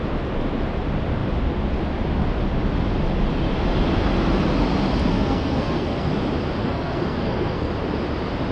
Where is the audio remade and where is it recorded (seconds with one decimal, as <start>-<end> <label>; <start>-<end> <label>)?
0.0-5.1 recorded; 5.1-6.1 remade; 6.1-6.6 recorded; 6.6-7.7 remade; 7.7-8.5 recorded